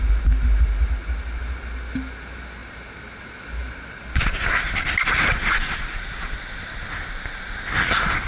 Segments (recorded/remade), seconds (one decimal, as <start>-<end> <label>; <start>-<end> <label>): 0.0-8.3 recorded